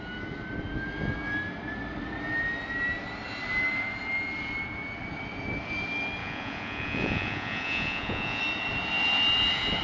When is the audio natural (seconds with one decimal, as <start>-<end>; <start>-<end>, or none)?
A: 0.0-6.2; 8.4-9.8